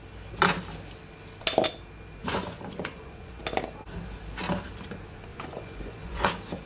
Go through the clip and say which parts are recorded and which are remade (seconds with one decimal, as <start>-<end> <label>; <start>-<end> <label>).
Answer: 0.0-2.2 recorded; 2.2-3.4 remade; 3.4-5.3 recorded; 5.3-6.3 remade; 6.3-6.7 recorded